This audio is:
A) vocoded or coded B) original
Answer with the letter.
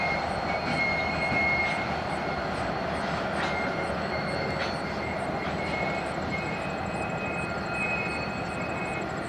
B